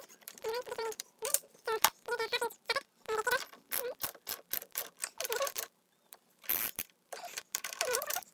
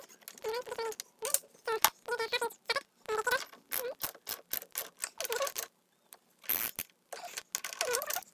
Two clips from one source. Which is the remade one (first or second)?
first